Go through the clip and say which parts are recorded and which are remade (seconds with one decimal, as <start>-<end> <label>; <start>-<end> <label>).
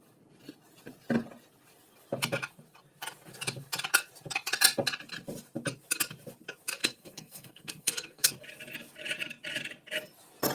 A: 0.0-6.8 recorded; 6.8-8.3 remade; 8.3-10.5 recorded